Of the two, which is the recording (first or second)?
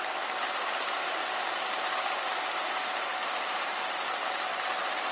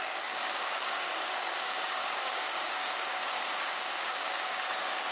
first